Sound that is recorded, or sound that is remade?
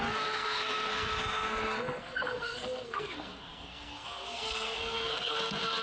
remade